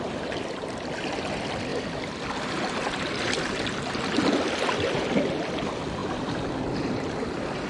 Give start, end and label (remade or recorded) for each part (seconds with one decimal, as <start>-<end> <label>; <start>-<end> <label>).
0.0-7.7 recorded